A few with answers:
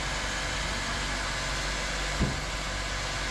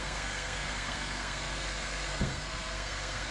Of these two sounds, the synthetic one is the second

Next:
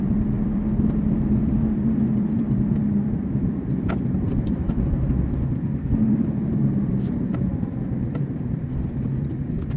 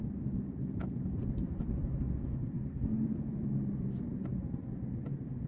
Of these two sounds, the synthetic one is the first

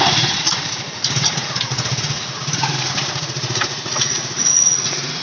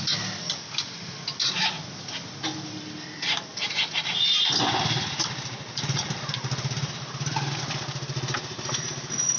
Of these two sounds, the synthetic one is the first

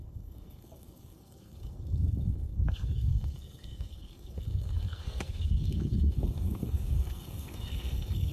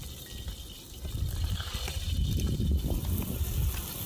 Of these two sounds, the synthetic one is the first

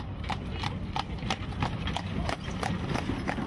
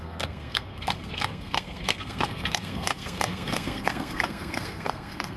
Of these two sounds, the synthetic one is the second